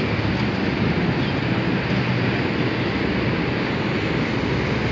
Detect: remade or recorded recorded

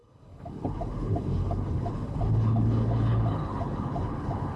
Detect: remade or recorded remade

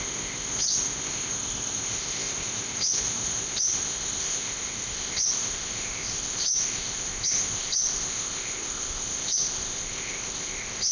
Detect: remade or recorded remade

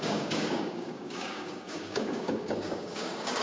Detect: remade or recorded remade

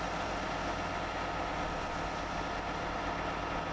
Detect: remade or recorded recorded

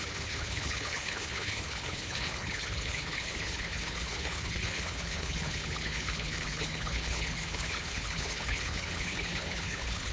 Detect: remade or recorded remade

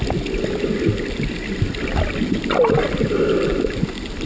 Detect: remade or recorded recorded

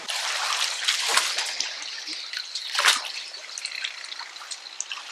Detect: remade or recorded recorded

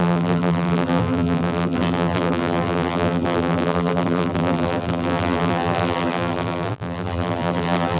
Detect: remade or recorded remade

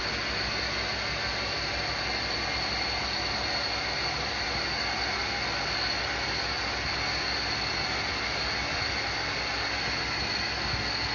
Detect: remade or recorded recorded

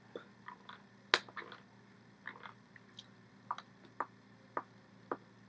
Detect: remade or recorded recorded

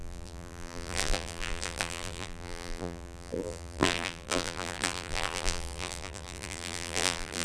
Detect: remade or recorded remade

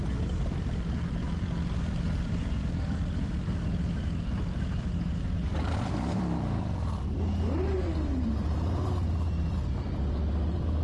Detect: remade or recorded remade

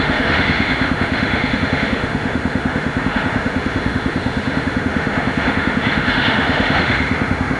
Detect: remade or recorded remade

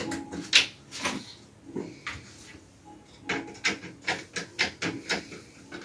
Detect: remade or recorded recorded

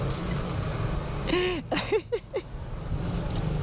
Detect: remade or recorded recorded